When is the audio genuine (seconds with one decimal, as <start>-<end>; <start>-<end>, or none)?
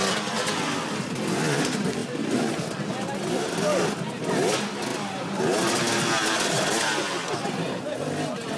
0.0-8.6